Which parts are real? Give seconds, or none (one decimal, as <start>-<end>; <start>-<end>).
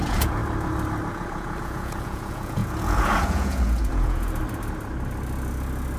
0.4-1.1; 4.4-6.0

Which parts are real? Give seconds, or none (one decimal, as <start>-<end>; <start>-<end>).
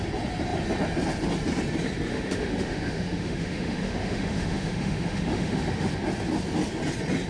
0.0-2.1; 5.9-7.3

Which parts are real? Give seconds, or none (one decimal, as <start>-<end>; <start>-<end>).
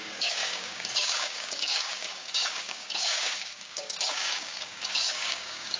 none